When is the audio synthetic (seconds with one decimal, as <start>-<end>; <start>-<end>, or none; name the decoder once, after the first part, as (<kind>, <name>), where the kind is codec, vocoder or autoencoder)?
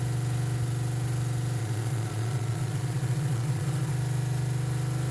1.6-3.9 (vocoder, Vocos)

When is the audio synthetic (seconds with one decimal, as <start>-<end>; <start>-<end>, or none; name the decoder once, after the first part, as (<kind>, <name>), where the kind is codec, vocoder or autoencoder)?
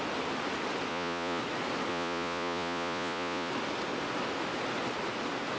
0.9-1.4 (vocoder, Vocos); 1.9-3.5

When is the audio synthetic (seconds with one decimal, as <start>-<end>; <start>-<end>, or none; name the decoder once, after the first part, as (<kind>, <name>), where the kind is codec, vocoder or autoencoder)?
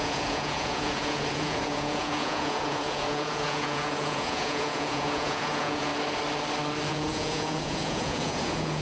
0.0-5.9 (vocoder, Vocos); 6.9-8.8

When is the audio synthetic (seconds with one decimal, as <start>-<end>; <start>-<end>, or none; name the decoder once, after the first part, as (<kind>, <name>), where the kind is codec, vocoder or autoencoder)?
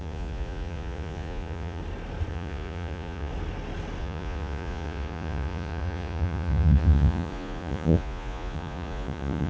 0.0-1.8 (vocoder, Vocos); 2.3-3.3; 4.0-9.5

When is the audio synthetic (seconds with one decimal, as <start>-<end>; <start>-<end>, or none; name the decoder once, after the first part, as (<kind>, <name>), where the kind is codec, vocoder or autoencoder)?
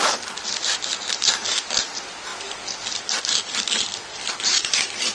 none